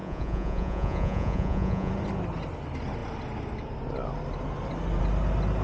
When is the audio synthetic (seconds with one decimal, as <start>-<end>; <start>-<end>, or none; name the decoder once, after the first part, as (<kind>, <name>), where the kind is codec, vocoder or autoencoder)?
0.0-1.9 (vocoder, Vocos)